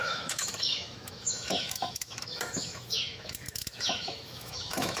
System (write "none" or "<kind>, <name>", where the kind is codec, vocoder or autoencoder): autoencoder, DAC-VAE